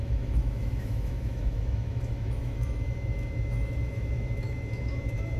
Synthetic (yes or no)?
yes